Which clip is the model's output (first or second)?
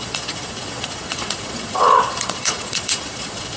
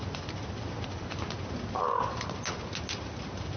first